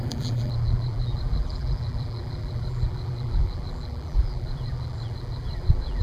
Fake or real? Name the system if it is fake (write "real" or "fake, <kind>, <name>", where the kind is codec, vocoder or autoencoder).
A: fake, vocoder, BigVGAN v2